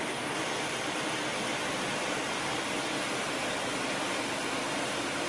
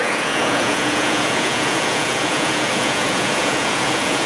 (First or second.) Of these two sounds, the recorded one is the first